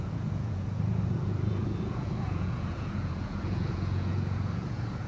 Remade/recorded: remade